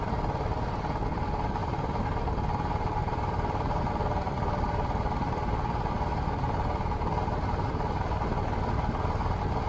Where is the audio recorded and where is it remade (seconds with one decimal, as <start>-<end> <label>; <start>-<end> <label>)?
0.0-1.6 recorded; 1.6-3.9 remade; 3.9-9.7 recorded